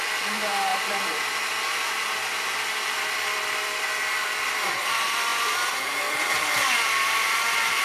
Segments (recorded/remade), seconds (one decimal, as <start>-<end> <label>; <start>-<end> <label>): 0.0-7.8 remade